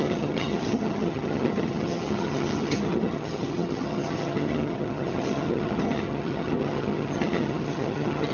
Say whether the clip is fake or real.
fake